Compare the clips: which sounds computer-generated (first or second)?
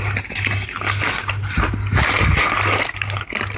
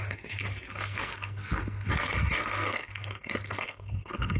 second